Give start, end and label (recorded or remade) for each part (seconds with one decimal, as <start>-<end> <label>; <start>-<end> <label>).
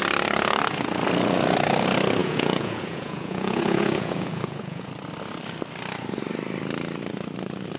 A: 0.0-2.2 recorded; 2.2-4.9 remade; 4.9-7.8 recorded